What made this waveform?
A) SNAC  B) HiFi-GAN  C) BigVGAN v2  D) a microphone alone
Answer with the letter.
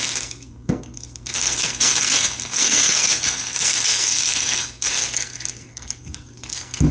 A